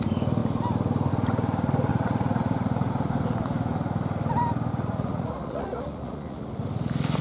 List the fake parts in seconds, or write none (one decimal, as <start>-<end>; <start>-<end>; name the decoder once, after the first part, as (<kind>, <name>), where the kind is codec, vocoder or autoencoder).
1.9-2.9 (vocoder, Vocos); 4.7-6.5